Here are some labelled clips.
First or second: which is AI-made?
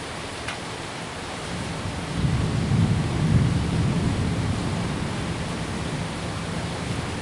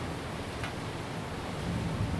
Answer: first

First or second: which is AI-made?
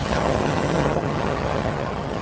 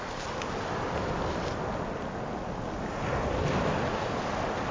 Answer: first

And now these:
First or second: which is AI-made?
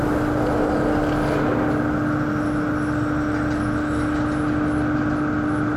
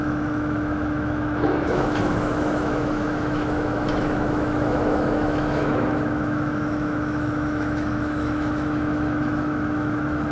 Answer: second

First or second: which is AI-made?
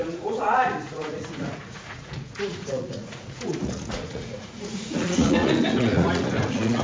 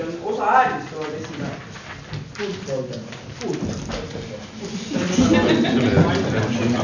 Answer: first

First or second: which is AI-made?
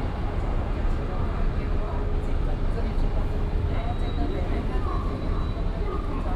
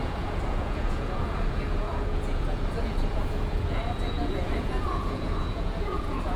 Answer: second